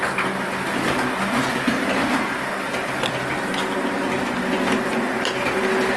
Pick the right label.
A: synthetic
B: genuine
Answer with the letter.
B